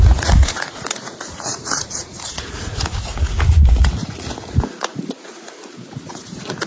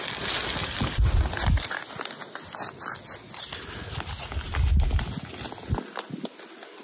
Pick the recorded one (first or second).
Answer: second